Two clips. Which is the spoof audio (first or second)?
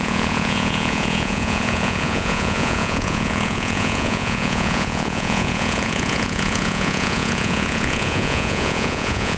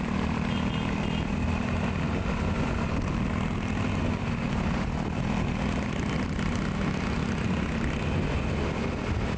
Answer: first